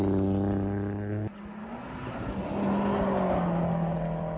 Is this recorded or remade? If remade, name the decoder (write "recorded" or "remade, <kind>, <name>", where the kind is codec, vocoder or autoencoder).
recorded